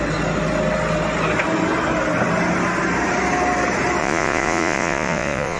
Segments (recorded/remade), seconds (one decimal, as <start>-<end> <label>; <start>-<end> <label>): 0.0-4.0 recorded; 4.0-5.6 remade